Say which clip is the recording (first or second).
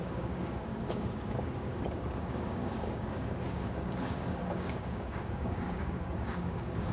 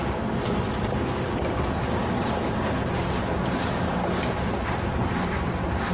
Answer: second